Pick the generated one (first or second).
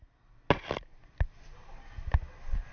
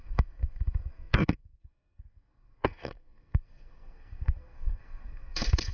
second